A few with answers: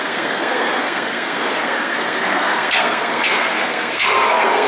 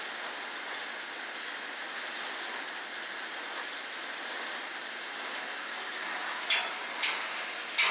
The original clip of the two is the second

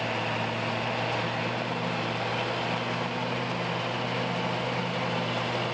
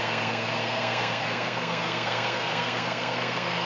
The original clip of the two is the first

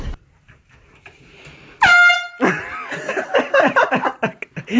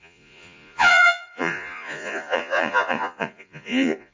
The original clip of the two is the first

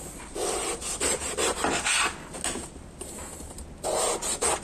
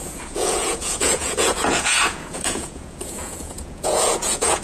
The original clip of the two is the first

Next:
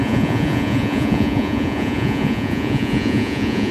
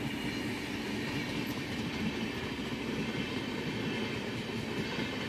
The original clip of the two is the second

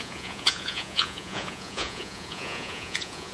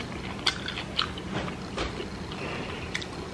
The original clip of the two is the second